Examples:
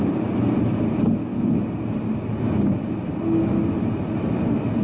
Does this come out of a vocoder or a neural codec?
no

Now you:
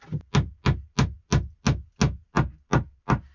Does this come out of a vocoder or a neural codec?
no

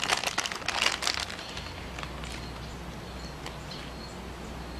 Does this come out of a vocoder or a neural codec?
no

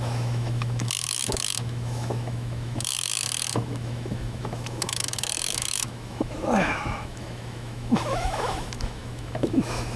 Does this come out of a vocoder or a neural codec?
yes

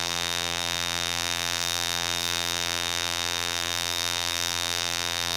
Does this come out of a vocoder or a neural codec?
yes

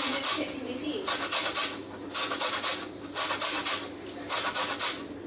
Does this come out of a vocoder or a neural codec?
no